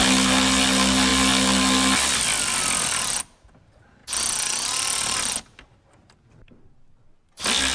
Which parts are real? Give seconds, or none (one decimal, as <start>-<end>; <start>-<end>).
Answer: 0.0-7.7